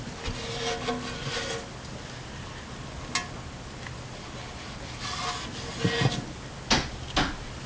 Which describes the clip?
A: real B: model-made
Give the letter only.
A